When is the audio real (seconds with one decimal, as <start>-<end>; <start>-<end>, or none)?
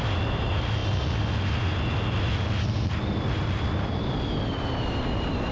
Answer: 0.0-5.5